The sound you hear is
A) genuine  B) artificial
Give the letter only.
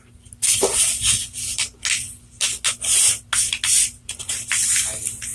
A